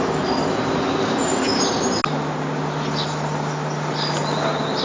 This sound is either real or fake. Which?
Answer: real